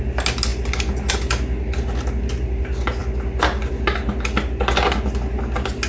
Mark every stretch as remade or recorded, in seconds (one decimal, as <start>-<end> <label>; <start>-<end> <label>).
0.0-5.9 recorded